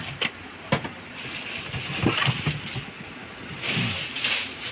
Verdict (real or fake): real